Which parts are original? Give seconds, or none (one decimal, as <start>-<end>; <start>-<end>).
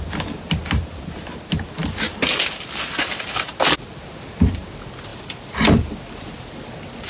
0.0-7.1